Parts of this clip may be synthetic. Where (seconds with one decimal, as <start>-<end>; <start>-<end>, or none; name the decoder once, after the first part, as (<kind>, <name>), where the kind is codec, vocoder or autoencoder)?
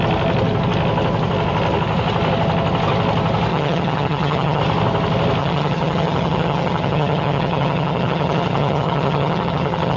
3.5-4.6 (vocoder, HiFi-GAN); 5.4-10.0